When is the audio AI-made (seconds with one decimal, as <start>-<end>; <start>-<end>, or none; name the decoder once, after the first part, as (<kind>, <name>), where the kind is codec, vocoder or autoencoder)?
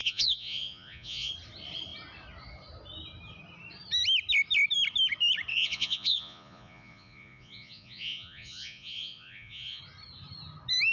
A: 0.0-1.3 (vocoder, Vocos); 5.5-9.8